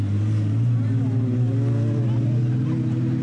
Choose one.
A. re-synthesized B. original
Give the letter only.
B